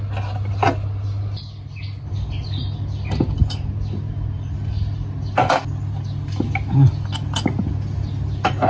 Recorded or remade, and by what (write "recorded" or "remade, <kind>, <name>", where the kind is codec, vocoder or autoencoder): recorded